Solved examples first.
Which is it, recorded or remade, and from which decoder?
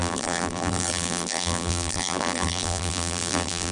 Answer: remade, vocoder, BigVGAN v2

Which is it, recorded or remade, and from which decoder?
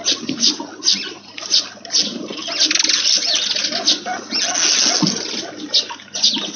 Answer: recorded